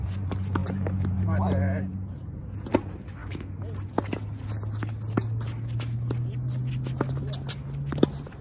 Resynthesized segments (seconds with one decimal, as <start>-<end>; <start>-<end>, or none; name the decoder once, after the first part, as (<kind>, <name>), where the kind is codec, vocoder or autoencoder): 0.6-2.2 (vocoder, BigVGAN v2)